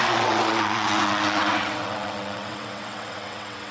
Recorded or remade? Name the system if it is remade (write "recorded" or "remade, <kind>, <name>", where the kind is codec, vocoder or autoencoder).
remade, vocoder, WaveNeXt